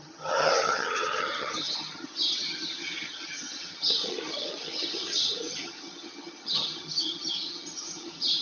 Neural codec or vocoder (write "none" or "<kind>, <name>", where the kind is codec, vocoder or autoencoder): vocoder, HiFi-GAN